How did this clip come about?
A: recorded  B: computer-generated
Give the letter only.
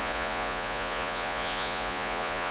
B